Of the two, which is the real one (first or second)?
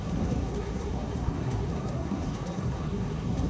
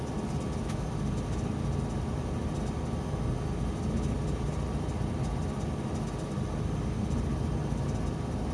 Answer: second